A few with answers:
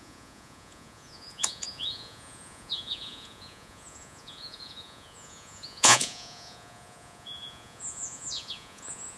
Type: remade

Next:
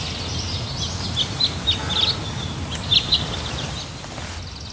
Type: recorded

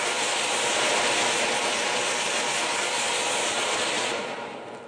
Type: recorded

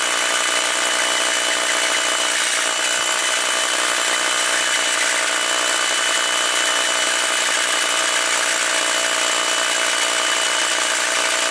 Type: recorded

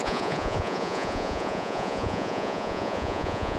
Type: remade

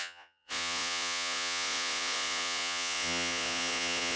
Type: remade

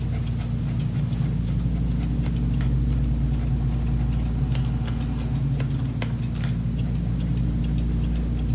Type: recorded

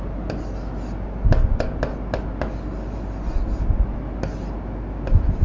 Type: recorded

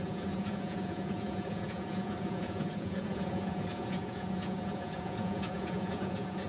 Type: remade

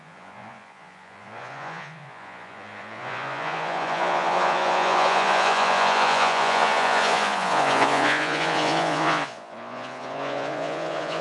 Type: remade